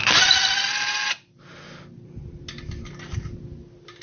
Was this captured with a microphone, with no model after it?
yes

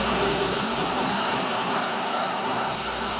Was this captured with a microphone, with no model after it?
no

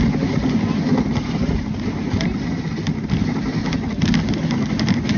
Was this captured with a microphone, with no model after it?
yes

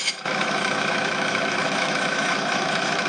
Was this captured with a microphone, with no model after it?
no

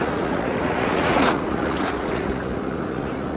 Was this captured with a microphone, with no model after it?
no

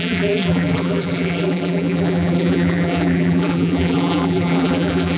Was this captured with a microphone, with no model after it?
no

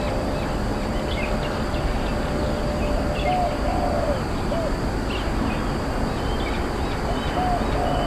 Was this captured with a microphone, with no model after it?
yes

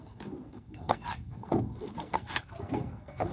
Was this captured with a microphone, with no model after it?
no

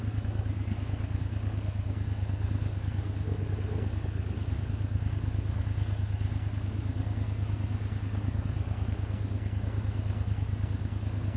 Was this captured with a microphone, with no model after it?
no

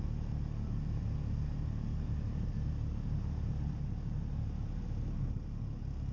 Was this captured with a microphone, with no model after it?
yes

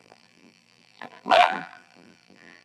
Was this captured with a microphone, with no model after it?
no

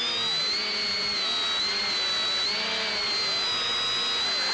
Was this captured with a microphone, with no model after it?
yes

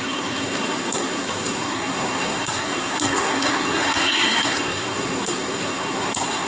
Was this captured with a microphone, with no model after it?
no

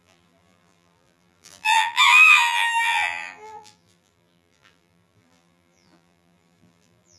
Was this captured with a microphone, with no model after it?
no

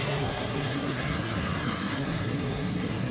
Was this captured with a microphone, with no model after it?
no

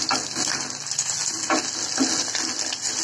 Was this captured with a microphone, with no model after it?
yes